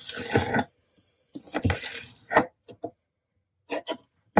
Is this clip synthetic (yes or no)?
no